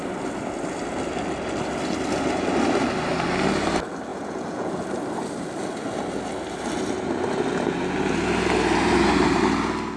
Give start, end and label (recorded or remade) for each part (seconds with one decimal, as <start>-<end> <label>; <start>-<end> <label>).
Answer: 0.0-4.1 recorded; 4.1-4.7 remade; 4.7-10.0 recorded

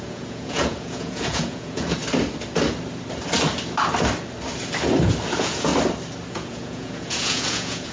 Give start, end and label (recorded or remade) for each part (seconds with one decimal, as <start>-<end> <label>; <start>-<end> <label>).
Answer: 0.0-2.0 remade; 2.0-5.3 recorded; 5.3-5.7 remade; 5.7-6.3 recorded; 6.3-7.9 remade

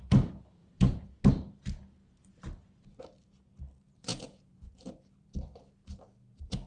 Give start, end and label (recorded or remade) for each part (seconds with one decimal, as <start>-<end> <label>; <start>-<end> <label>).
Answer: 0.0-0.6 recorded; 0.6-1.2 remade; 1.2-4.1 recorded; 4.1-4.7 remade; 4.7-6.7 recorded

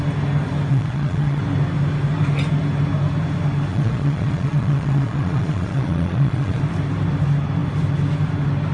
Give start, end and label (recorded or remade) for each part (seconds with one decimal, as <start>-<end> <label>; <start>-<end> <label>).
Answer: 0.0-0.7 recorded; 0.7-1.4 remade; 1.4-3.7 recorded; 3.7-6.6 remade; 6.6-8.7 recorded

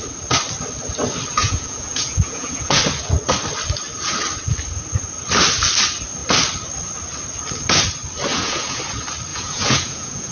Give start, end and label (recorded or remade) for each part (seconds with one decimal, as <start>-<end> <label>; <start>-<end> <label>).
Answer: 0.0-1.4 recorded; 1.4-2.8 remade; 2.8-8.3 recorded; 8.3-8.8 remade; 8.8-9.3 recorded; 9.3-10.3 remade